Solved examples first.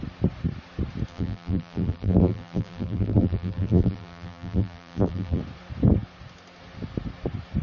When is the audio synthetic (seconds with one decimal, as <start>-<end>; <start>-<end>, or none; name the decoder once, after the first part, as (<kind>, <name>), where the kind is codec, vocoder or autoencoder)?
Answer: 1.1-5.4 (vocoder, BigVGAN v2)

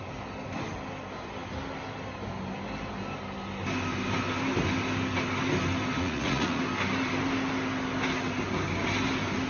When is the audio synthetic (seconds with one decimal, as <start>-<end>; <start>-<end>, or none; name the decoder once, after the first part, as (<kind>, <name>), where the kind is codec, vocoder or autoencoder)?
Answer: 5.9-6.6 (vocoder, Vocos)

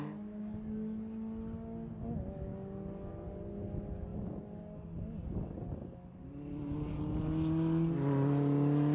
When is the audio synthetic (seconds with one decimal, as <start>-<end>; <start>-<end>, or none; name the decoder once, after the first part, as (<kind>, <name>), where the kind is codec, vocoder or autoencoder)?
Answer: none

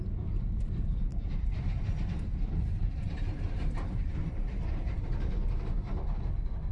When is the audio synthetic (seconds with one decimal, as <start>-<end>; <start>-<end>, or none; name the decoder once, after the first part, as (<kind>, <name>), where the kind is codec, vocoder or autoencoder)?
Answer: 1.1-5.1 (vocoder, BigVGAN v2)